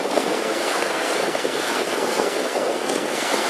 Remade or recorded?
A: remade